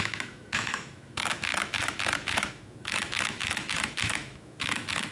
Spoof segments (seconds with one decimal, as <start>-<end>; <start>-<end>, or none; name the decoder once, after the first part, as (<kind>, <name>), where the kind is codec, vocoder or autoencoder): 0.0-5.1 (autoencoder, DAC-VAE)